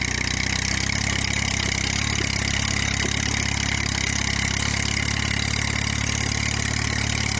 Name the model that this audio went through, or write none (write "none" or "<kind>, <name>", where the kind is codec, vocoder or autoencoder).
none